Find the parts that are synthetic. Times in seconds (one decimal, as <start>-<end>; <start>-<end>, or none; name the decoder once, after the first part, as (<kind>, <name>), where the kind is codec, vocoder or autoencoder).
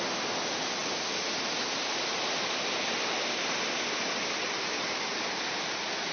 none